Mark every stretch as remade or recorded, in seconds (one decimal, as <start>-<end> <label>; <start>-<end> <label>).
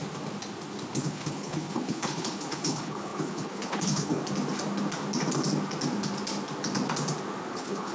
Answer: 0.0-1.0 recorded; 1.0-4.2 remade; 4.2-7.5 recorded; 7.5-7.9 remade